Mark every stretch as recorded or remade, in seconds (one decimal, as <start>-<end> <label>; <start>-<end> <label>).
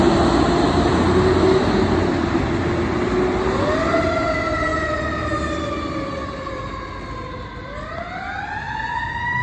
0.0-9.4 recorded